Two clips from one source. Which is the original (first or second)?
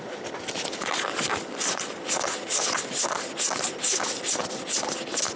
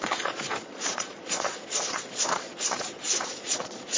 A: first